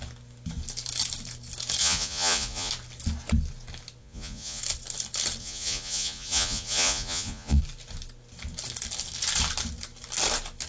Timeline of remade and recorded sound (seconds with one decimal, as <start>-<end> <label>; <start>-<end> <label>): 0.0-1.8 recorded; 1.8-2.7 remade; 2.7-4.0 recorded; 4.0-4.6 remade; 4.6-5.4 recorded; 5.4-7.6 remade; 7.6-10.7 recorded